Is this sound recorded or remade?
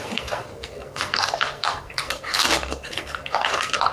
remade